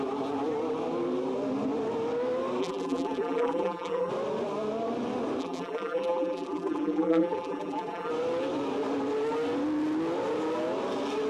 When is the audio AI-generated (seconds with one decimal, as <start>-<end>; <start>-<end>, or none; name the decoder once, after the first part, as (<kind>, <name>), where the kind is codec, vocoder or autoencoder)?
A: 2.6-4.1 (vocoder, BigVGAN v2); 5.4-8.1